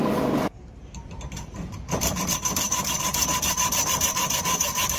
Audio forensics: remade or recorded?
remade